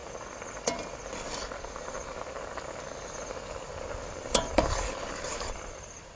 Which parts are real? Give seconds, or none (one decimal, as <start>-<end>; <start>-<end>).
0.0-6.2